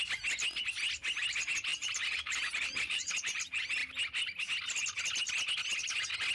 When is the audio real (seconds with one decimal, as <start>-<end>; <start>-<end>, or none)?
0.0-1.7; 3.4-6.3